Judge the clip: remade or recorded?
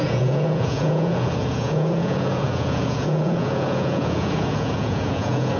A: remade